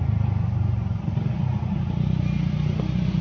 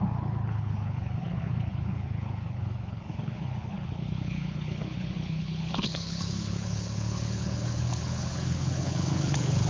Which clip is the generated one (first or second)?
second